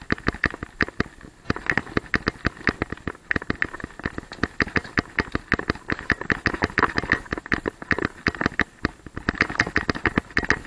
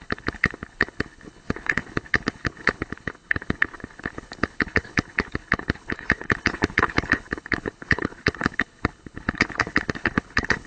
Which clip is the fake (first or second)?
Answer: second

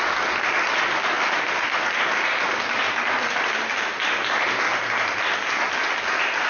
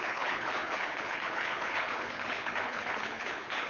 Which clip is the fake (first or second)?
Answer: second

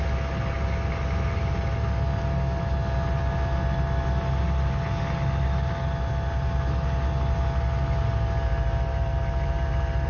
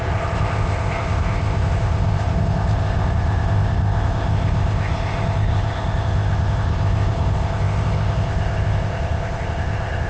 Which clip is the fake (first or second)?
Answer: second